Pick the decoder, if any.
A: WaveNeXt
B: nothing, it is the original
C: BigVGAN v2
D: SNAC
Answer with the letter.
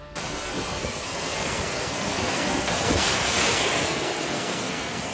D